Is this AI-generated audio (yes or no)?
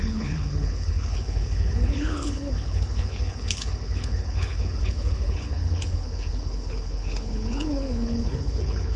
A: yes